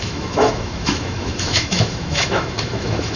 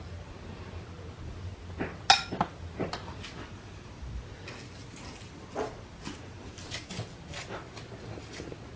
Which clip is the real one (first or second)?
second